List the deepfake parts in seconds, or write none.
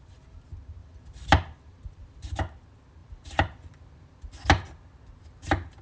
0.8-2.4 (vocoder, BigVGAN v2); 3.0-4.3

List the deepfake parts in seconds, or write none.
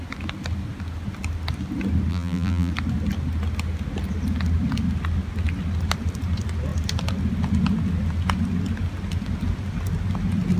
2.1-2.7 (vocoder, BigVGAN v2)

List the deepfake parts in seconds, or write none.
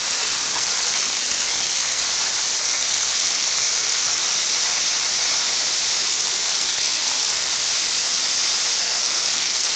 0.0-2.0 (codec, SNAC); 2.6-4.2; 6.1-7.5; 8.8-9.8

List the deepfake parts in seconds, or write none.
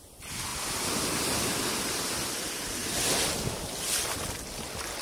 none